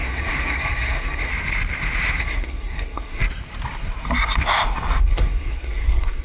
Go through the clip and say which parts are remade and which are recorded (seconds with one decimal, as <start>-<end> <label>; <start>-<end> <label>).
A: 0.0-1.3 remade; 1.3-2.2 recorded; 2.2-3.2 remade; 3.2-5.0 recorded; 5.0-6.2 remade